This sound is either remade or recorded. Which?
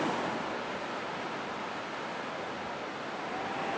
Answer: recorded